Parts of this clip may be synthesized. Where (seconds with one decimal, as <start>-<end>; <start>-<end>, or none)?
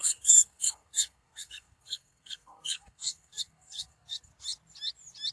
0.0-4.3